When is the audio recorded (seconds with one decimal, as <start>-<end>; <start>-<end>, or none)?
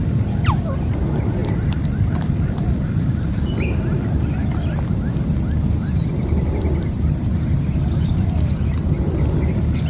0.5-1.4; 3.1-5.8; 8.2-9.9